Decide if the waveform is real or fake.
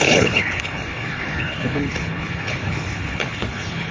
fake